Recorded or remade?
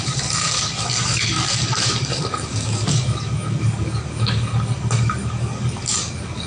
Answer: remade